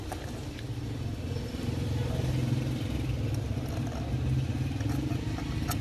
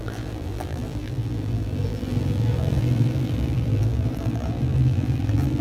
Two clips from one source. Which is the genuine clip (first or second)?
first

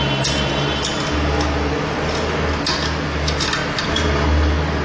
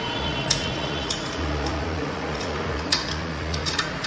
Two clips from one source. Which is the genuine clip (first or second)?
first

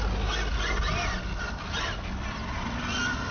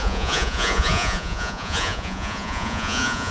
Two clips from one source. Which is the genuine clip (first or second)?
first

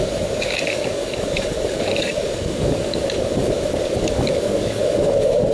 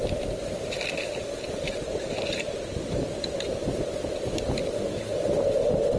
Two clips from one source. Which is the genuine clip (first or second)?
second